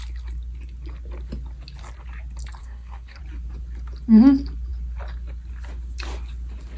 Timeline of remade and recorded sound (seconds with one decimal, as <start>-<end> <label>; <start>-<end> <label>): 0.0-2.6 recorded; 2.6-3.2 remade; 3.2-6.8 recorded